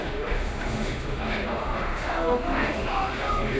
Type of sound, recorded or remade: remade